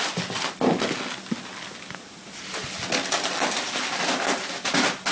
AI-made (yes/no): no